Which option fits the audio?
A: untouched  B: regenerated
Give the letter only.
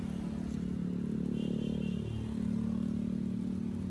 A